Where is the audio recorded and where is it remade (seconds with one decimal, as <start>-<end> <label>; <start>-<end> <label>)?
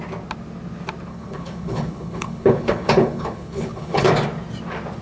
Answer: 0.0-1.1 recorded; 1.1-4.1 remade; 4.1-5.0 recorded